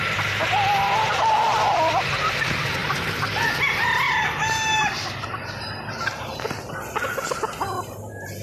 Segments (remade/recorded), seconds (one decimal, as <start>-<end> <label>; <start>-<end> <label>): 0.0-8.4 recorded